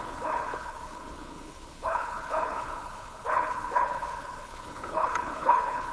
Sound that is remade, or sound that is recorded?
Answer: remade